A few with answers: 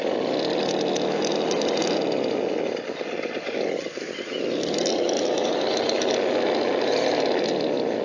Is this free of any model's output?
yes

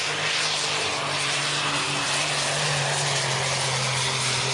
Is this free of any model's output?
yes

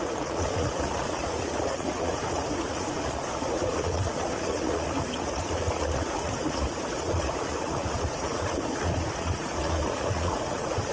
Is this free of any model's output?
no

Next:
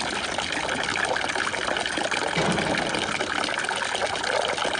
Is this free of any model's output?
yes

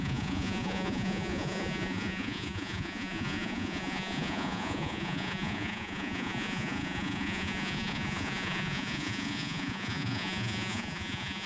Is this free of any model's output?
no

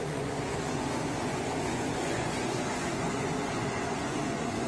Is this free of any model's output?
no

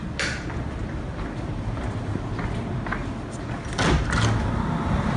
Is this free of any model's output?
yes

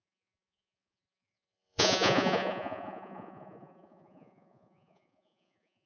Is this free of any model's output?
no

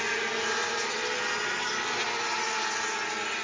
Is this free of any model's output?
yes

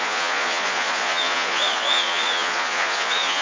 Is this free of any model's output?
no